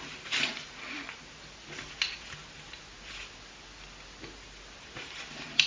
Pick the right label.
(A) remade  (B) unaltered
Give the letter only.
B